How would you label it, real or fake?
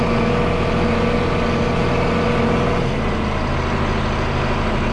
real